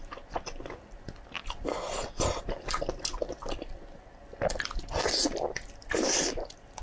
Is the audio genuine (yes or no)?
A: yes